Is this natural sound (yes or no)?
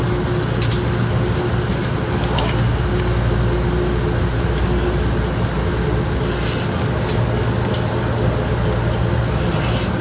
yes